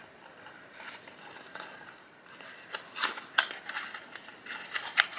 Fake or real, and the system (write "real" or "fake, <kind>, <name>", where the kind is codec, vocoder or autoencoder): real